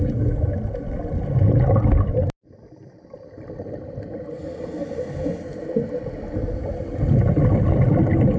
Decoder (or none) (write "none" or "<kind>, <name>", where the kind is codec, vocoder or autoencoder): none